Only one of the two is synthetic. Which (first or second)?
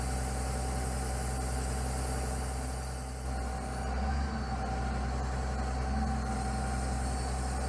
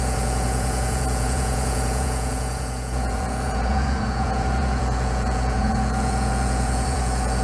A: second